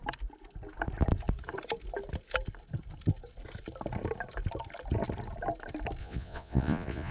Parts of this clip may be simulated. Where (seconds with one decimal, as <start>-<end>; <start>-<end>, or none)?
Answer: 6.0-7.1